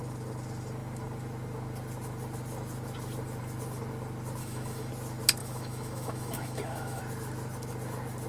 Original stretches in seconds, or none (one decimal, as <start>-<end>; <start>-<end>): 0.0-4.4; 4.9-5.4; 7.0-8.3